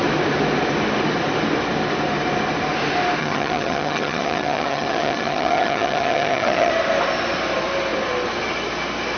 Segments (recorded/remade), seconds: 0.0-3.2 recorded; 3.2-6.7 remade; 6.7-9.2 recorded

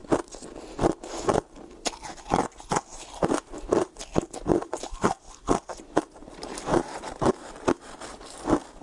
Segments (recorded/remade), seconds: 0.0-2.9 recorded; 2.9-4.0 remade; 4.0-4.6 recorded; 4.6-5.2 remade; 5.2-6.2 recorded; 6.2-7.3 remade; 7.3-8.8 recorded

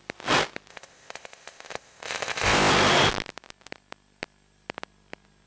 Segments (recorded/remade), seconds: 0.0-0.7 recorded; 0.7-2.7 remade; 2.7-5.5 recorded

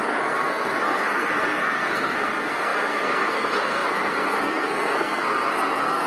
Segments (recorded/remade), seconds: 0.0-6.1 remade

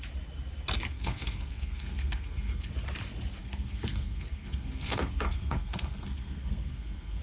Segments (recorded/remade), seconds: 0.0-0.9 recorded; 0.9-2.7 remade; 2.7-3.4 recorded; 3.4-7.2 remade

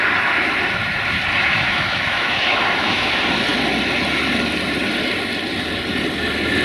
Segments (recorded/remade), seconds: 0.0-1.4 recorded; 1.4-3.1 remade; 3.1-6.6 recorded

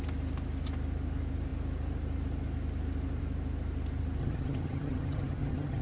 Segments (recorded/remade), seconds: 0.0-4.2 recorded; 4.2-5.8 remade